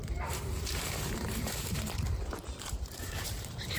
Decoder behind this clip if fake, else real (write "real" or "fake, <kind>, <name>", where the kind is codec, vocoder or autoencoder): fake, vocoder, BigVGAN v2